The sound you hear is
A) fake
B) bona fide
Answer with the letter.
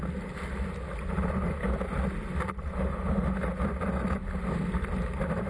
B